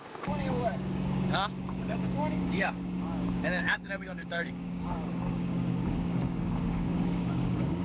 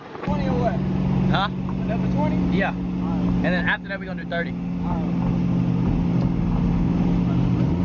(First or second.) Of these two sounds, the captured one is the second